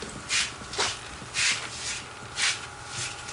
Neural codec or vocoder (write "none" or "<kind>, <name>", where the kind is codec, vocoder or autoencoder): none